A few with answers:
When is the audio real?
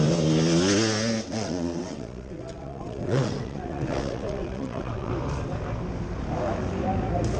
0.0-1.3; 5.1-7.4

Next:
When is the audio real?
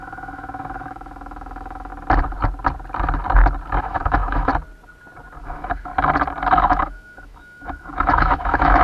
1.9-3.8; 4.5-5.4; 5.9-6.6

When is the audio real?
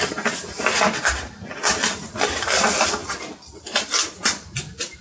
none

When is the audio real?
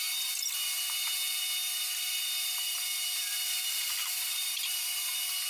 0.0-2.9; 4.5-5.5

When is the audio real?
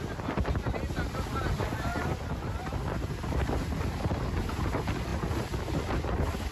0.0-1.9; 4.0-6.5